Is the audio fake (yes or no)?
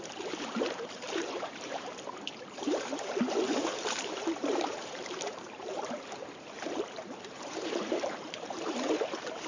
yes